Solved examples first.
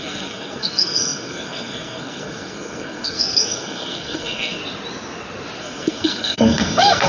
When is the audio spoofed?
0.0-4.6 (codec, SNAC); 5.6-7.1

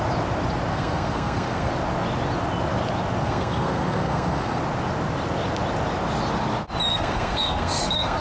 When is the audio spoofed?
0.7-1.7 (codec, SNAC); 3.2-4.6; 6.9-8.2

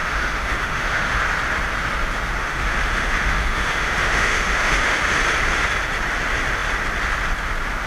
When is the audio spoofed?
0.0-1.2 (autoencoder, DAC-VAE); 2.4-5.1